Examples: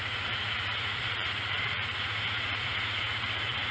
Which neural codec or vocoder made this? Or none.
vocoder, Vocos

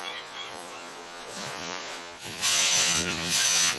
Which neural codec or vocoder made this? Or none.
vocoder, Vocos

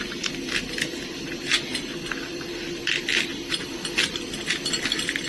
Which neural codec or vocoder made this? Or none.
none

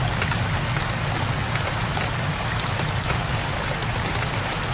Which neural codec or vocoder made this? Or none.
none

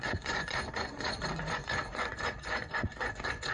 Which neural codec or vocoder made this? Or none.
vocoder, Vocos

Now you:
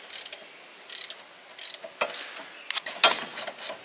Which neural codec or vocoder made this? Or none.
none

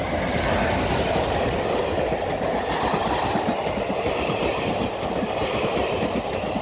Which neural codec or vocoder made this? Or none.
none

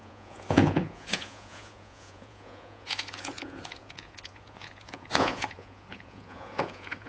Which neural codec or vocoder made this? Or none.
vocoder, Vocos